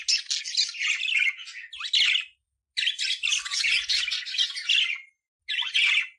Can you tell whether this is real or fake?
real